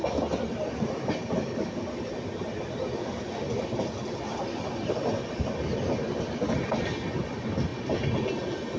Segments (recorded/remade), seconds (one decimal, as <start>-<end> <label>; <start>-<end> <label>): 0.0-8.8 recorded